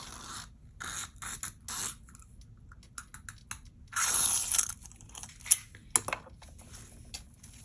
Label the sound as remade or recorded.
recorded